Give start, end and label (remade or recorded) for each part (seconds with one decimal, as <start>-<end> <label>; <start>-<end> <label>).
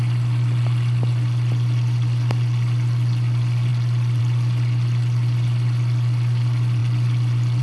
0.0-7.6 recorded